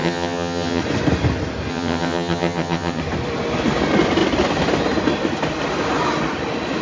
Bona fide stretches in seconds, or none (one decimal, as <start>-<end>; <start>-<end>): 0.8-1.7; 3.0-6.8